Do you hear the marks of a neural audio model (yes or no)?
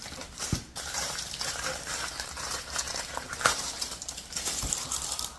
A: yes